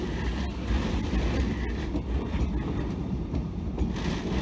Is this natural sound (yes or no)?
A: yes